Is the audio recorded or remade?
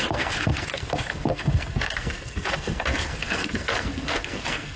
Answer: remade